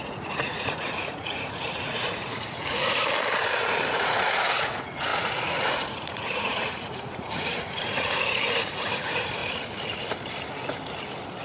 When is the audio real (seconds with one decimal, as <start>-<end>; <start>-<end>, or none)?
3.0-3.9; 9.4-11.4